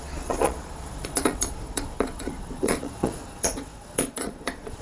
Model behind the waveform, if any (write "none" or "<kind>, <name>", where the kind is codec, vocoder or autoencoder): vocoder, Vocos